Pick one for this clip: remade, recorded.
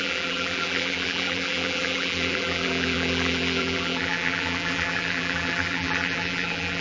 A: remade